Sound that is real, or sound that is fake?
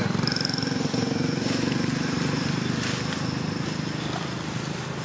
real